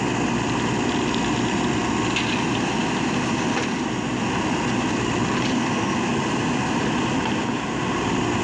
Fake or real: real